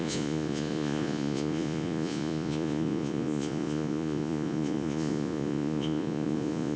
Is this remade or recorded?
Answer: remade